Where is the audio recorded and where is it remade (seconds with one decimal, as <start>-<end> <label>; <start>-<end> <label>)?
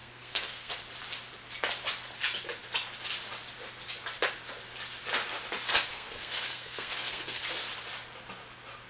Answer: 0.0-0.7 remade; 0.7-5.9 recorded; 5.9-7.4 remade; 7.4-8.9 recorded